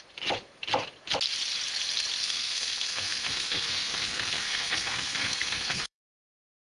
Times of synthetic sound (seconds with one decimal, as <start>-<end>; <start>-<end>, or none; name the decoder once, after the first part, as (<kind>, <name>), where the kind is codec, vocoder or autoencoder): 2.2-6.3 (codec, SNAC)